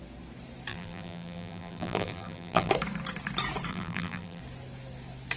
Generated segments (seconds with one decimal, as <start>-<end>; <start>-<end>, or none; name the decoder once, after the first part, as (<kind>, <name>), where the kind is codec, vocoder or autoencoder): 0.7-2.7 (vocoder, BigVGAN v2); 3.7-4.4